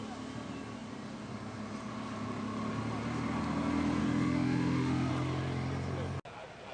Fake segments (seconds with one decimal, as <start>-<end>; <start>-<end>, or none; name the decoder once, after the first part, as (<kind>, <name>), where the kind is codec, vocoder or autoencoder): 4.0-5.1 (autoencoder, DAC-VAE)